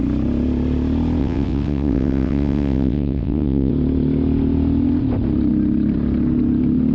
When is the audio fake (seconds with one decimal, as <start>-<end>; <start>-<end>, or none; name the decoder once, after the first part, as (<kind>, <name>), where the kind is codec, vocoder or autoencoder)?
1.2-3.7 (vocoder, WaveNeXt)